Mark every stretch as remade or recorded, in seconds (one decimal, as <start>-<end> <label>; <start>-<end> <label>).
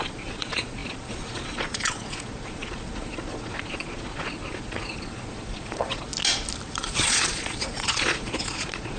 0.0-6.1 remade; 6.1-6.7 recorded; 6.7-9.0 remade